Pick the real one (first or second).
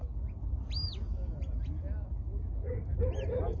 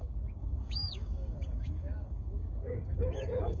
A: first